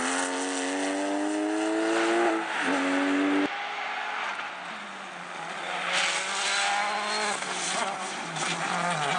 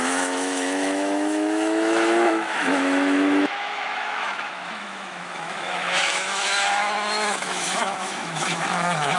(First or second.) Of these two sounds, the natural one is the first